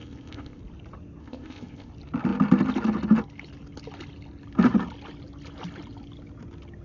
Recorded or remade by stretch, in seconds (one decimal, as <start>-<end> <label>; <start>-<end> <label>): 0.0-0.6 remade; 0.6-1.2 recorded; 1.2-1.9 remade; 1.9-6.8 recorded